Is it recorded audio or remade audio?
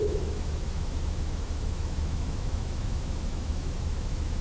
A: remade